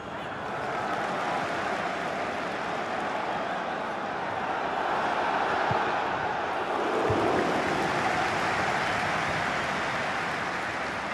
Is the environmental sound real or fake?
real